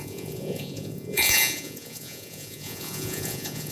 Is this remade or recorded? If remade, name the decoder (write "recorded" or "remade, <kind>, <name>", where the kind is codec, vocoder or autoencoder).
remade, vocoder, Vocos